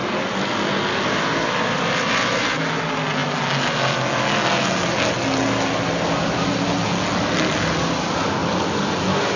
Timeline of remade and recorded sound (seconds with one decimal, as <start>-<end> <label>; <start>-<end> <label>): 0.0-9.4 recorded